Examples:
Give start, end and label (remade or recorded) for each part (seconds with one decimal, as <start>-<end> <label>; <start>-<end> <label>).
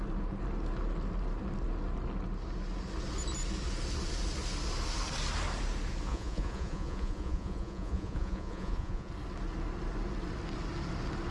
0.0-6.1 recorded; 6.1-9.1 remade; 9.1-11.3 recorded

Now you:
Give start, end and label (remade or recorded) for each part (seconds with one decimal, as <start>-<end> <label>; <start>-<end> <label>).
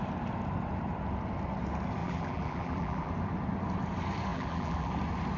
0.0-2.0 recorded; 2.0-3.1 remade; 3.1-4.3 recorded; 4.3-4.9 remade; 4.9-5.4 recorded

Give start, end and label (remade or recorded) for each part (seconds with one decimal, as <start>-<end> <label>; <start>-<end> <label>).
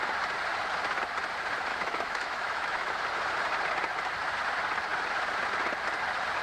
0.0-1.7 recorded; 1.7-2.9 remade; 2.9-6.4 recorded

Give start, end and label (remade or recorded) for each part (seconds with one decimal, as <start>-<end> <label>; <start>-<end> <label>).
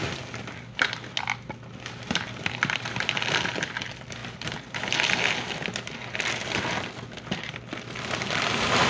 0.0-8.9 recorded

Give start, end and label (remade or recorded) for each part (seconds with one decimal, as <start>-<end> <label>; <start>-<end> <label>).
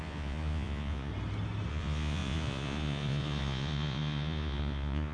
0.0-1.1 remade; 1.1-1.7 recorded; 1.7-5.1 remade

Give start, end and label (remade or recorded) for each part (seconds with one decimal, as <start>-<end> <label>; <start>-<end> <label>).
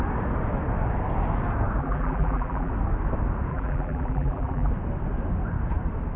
0.0-1.8 recorded; 1.8-2.7 remade; 2.7-3.5 recorded; 3.5-4.7 remade; 4.7-6.2 recorded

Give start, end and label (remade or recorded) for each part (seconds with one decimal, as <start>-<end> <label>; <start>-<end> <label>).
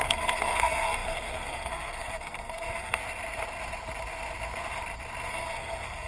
0.0-3.0 remade; 3.0-5.3 recorded; 5.3-6.1 remade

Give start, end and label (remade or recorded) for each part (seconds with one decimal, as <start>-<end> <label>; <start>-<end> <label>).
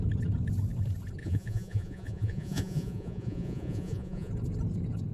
0.0-1.2 recorded; 1.2-4.3 remade; 4.3-5.1 recorded